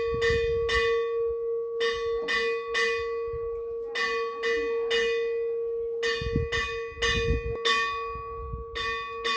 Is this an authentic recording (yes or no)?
yes